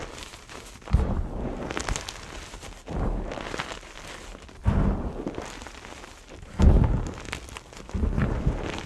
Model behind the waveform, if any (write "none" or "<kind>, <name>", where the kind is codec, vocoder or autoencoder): none